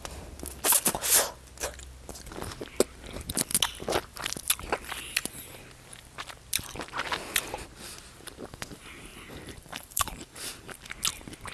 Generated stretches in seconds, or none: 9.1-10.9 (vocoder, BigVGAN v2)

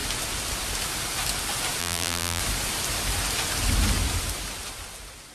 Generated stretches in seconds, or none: 1.8-2.4 (vocoder, BigVGAN v2)